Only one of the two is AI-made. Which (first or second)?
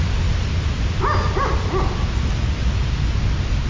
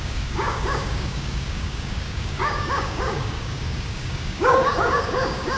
second